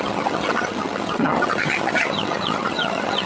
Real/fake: fake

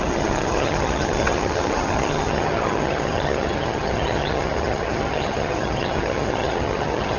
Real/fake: fake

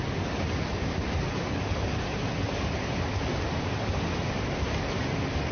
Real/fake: real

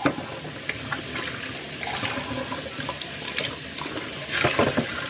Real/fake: real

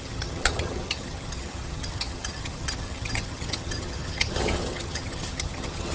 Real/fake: fake